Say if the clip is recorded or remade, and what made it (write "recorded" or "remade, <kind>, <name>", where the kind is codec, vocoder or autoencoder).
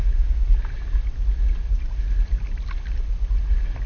recorded